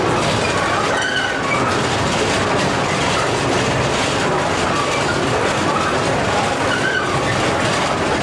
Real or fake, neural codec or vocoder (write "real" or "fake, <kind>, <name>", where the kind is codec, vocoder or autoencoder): real